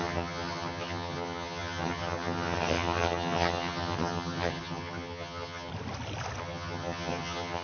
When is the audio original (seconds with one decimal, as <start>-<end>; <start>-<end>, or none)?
5.7-6.4